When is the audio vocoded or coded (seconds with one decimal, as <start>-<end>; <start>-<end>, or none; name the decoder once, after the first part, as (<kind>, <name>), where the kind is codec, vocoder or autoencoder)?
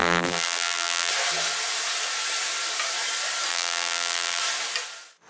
0.0-1.1 (vocoder, BigVGAN v2); 3.5-4.4